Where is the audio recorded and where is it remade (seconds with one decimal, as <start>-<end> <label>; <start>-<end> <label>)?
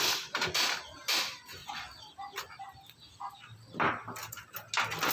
0.0-5.1 recorded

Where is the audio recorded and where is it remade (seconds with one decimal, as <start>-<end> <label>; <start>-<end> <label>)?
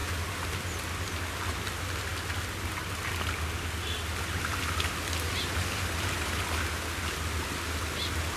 0.0-8.4 recorded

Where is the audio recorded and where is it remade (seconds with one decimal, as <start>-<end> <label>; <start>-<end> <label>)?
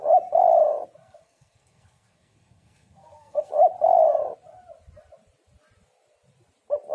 0.0-1.0 recorded; 1.0-3.5 remade; 3.5-6.9 recorded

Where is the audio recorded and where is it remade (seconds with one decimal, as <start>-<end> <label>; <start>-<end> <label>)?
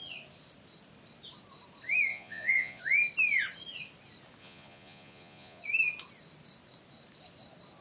0.0-2.1 recorded; 2.1-2.8 remade; 2.8-4.4 recorded; 4.4-5.6 remade; 5.6-7.8 recorded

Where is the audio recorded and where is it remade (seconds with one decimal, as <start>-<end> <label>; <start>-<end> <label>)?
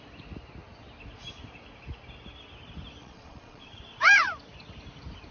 0.0-3.0 recorded; 3.0-3.8 remade; 3.8-5.3 recorded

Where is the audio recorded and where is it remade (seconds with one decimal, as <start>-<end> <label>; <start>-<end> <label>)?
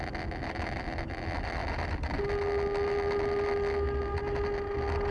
0.0-5.1 recorded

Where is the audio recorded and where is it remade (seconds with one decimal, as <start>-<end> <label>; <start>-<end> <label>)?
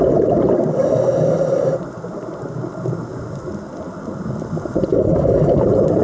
0.0-4.9 recorded; 4.9-5.6 remade; 5.6-6.0 recorded